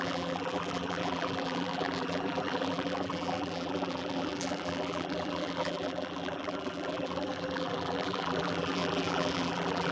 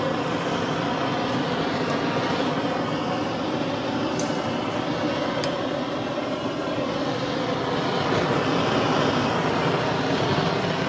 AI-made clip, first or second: first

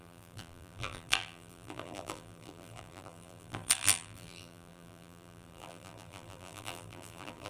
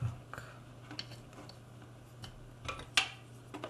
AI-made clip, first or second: first